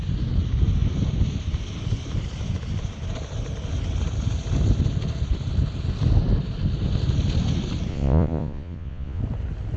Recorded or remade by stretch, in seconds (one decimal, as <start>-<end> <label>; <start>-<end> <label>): 0.0-7.9 recorded; 7.9-9.2 remade; 9.2-9.8 recorded